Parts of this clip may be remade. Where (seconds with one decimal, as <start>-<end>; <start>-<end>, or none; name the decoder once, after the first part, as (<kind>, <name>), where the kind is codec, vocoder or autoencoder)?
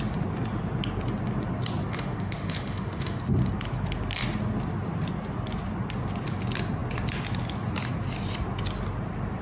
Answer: 1.9-3.2 (autoencoder, DAC-VAE)